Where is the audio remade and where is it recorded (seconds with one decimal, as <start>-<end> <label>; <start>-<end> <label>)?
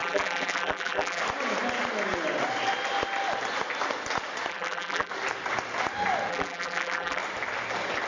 0.0-1.2 remade; 1.2-4.5 recorded; 4.5-5.1 remade; 5.1-6.3 recorded; 6.3-7.2 remade; 7.2-8.1 recorded